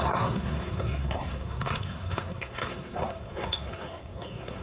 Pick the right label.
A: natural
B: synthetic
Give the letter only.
B